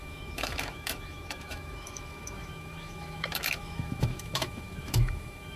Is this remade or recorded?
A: remade